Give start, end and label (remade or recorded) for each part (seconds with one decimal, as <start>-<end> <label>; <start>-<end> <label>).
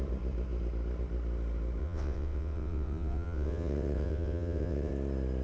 0.0-1.8 recorded; 1.8-4.9 remade; 4.9-5.4 recorded